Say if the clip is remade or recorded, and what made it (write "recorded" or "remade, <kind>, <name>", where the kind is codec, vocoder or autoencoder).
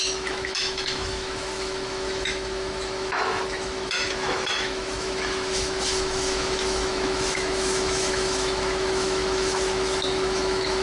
remade, autoencoder, DAC-VAE